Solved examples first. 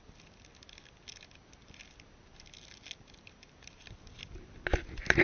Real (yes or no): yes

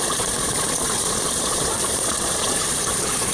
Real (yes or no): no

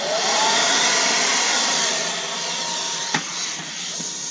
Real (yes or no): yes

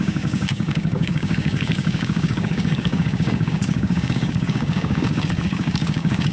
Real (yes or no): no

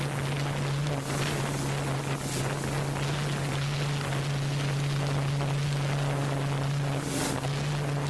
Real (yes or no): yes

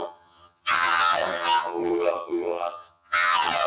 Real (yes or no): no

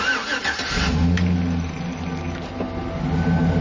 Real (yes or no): yes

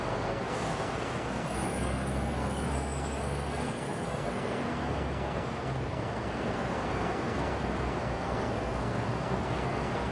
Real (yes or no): no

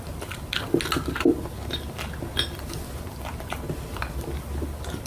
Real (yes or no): yes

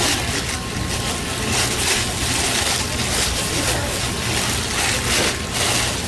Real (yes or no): yes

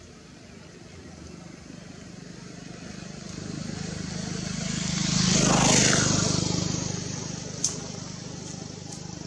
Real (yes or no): yes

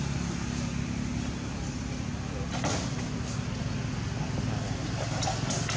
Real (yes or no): yes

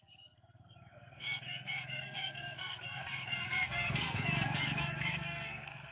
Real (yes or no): no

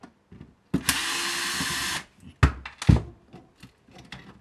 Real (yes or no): yes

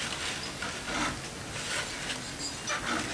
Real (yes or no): yes